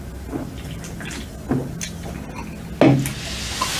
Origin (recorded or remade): recorded